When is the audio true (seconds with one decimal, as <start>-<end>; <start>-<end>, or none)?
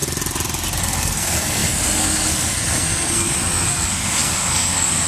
0.0-0.8